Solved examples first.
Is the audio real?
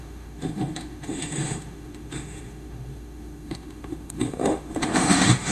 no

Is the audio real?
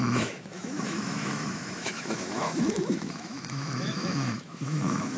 no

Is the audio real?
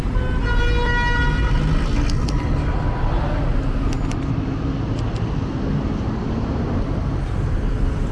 yes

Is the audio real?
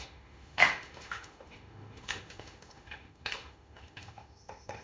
no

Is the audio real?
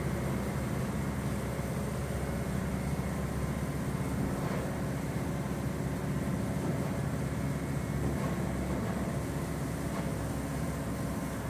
yes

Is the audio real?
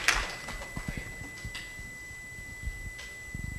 yes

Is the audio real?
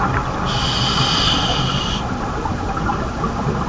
yes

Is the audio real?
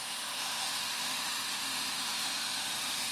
no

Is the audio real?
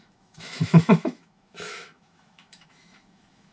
no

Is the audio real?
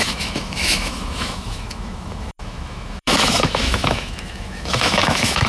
no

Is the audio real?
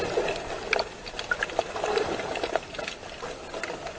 yes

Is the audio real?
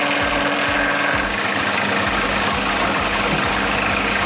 yes